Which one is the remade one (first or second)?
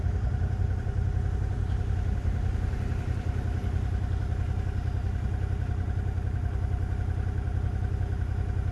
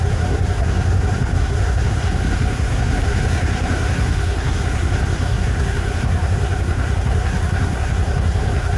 second